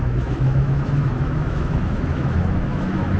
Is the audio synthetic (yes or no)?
yes